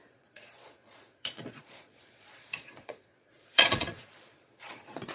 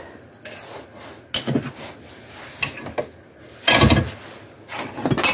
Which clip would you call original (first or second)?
second